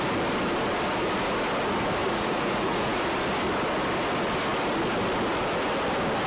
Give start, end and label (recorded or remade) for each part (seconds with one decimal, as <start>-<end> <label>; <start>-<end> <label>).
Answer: 0.0-2.0 recorded; 2.0-3.0 remade; 3.0-6.3 recorded